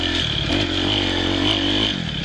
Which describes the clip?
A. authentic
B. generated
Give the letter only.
A